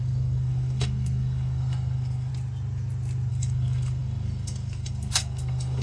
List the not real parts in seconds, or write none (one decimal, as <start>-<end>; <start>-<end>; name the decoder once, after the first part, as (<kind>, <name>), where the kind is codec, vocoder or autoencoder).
0.0-2.3 (codec, SNAC); 3.3-5.8